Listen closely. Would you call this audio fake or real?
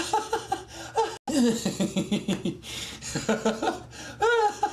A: real